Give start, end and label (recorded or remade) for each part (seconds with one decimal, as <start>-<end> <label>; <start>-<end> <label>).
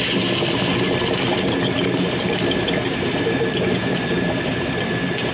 0.0-1.3 recorded; 1.3-4.5 remade; 4.5-5.3 recorded